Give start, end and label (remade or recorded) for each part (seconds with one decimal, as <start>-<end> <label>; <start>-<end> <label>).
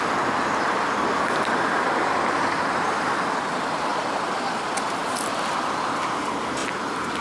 0.0-7.2 recorded